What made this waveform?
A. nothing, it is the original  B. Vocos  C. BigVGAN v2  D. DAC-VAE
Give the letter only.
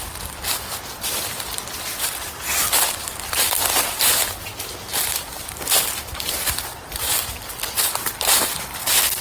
A